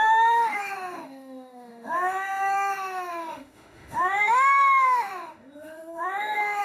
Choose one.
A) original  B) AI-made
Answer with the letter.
B